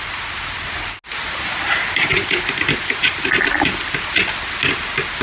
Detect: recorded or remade recorded